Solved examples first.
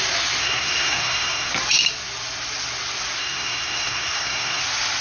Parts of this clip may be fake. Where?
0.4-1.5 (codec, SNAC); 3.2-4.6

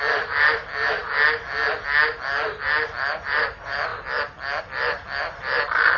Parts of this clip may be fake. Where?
0.0-1.0 (vocoder, BigVGAN v2); 2.9-3.9; 4.6-6.0

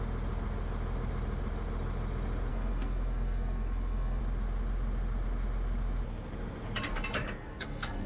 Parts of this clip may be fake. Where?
2.5-4.2 (codec, SNAC); 7.4-8.1

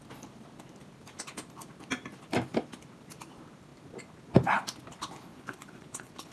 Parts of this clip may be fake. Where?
5.3-6.3 (vocoder, Vocos)